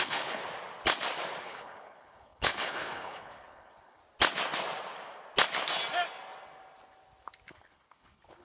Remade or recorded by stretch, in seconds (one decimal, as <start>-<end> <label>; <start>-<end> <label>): 0.0-0.4 remade; 0.4-1.4 recorded; 1.4-4.0 remade; 4.0-7.5 recorded; 7.5-8.4 remade